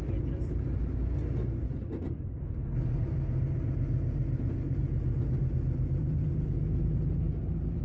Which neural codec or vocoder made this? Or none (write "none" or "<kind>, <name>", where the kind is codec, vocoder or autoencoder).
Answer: none